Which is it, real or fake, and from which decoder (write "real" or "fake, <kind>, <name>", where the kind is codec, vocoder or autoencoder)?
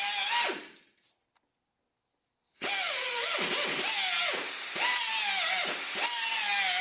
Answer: real